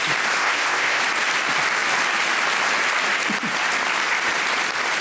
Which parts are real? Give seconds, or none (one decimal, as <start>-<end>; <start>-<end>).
0.0-0.4; 1.0-5.0